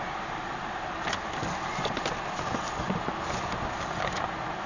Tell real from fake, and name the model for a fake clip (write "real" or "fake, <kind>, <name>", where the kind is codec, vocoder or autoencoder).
real